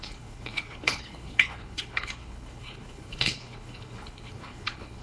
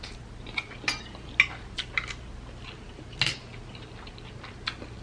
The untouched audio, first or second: second